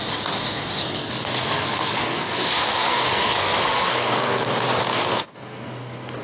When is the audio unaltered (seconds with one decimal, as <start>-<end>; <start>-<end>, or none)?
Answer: 0.0-0.8; 4.5-5.3